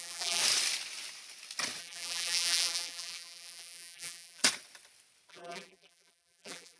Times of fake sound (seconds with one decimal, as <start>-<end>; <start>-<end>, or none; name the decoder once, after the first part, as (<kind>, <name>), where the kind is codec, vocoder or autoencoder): 0.0-0.4 (vocoder, BigVGAN v2); 1.8-4.4; 5.3-6.8